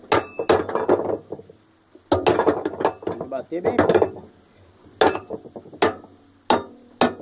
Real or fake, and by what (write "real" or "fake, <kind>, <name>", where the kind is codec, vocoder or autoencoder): real